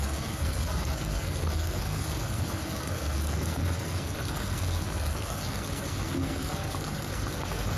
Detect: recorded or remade remade